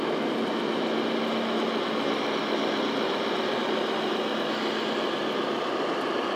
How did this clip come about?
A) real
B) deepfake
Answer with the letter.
A